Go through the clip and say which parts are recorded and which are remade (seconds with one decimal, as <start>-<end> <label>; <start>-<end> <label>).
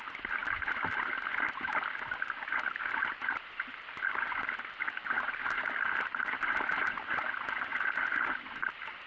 0.0-0.4 recorded; 0.4-1.2 remade; 1.2-3.2 recorded; 3.2-6.3 remade; 6.3-9.1 recorded